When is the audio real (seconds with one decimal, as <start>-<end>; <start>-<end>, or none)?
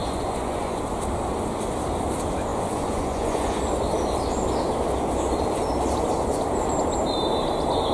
0.8-2.5; 3.6-7.9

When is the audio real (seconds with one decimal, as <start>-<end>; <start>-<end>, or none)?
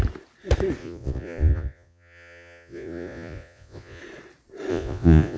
0.0-0.8; 4.0-4.7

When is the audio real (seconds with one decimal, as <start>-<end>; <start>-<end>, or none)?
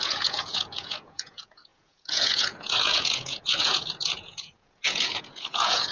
none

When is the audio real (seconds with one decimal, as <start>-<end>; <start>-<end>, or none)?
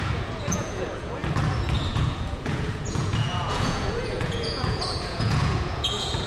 1.2-1.9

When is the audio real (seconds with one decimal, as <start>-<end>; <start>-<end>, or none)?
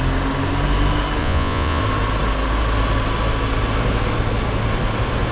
0.0-1.2; 1.8-5.3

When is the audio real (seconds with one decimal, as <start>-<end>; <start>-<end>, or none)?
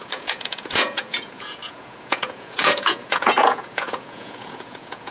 none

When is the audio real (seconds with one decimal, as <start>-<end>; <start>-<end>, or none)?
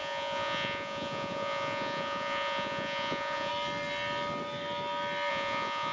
3.5-5.3